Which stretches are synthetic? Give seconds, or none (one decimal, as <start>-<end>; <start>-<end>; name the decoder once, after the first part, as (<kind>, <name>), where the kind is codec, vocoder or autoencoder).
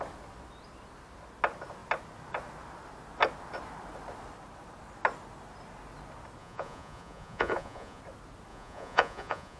6.4-8.0 (vocoder, Vocos); 8.5-9.6